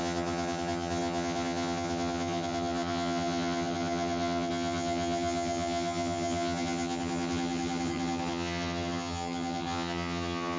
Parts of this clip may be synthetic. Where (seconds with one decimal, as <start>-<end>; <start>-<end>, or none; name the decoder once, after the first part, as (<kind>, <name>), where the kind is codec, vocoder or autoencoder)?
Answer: 0.0-10.6 (vocoder, HiFi-GAN)